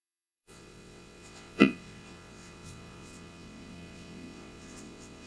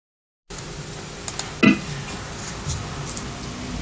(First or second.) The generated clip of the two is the first